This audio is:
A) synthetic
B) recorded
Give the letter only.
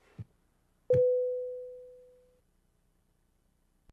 B